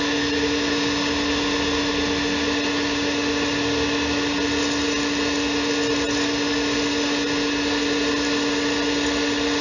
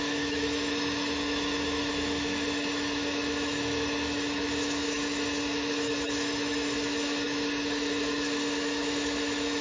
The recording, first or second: first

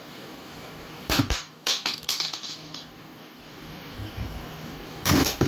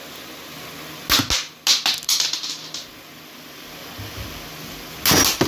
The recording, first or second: second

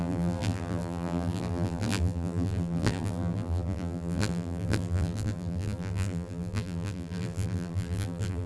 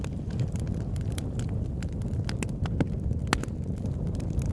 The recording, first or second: second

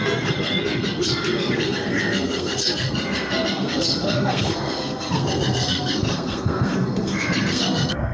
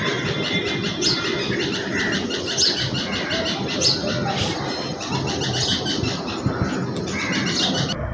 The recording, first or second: second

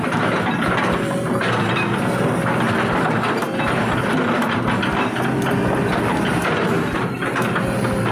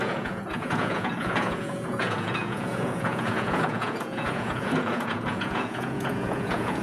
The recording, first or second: first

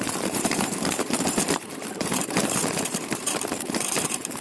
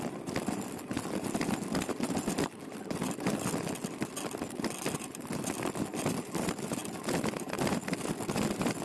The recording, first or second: second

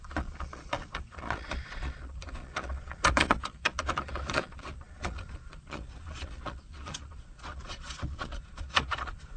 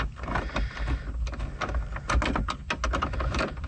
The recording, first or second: second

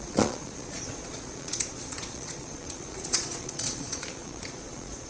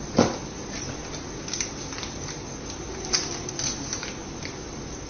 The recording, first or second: second